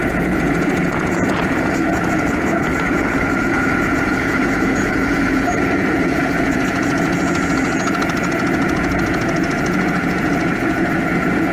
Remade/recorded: remade